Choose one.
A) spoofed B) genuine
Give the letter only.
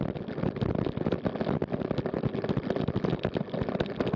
B